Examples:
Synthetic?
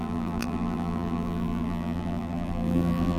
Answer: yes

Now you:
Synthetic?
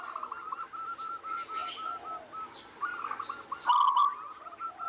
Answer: no